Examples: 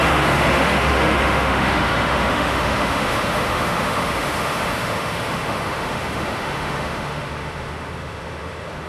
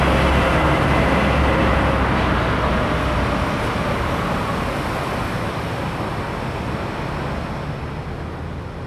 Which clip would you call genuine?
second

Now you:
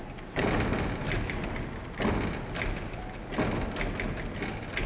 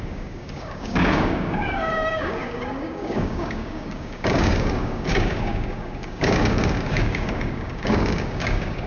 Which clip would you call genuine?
first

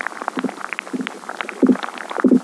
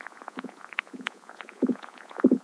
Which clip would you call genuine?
first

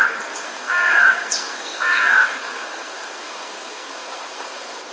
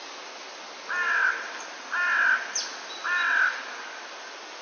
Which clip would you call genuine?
second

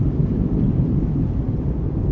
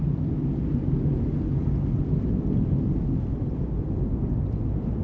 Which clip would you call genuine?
second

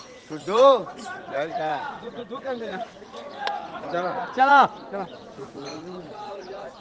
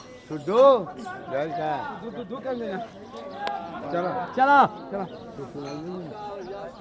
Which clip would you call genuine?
second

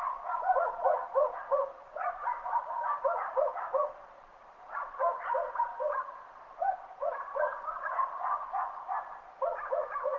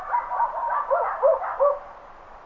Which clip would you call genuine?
second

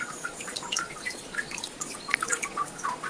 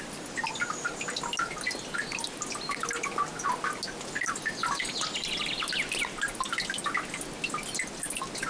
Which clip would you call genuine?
second